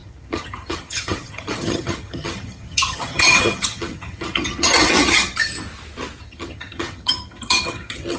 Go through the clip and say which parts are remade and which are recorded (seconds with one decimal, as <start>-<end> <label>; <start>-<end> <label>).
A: 0.0-5.5 remade; 5.5-6.2 recorded; 6.2-8.2 remade